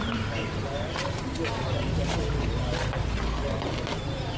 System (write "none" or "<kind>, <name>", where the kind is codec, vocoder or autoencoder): none